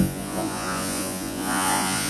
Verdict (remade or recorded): remade